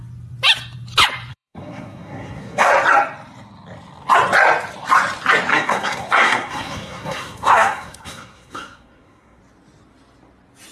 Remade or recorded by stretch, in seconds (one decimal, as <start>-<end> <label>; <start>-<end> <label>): 0.0-1.3 recorded; 1.3-2.7 remade; 2.7-5.5 recorded; 5.5-9.4 remade; 9.4-10.7 recorded